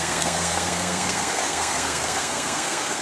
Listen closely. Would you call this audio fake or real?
fake